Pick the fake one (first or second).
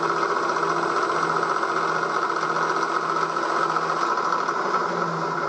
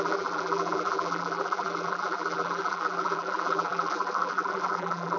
second